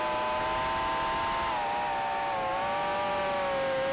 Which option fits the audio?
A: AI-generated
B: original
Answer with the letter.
B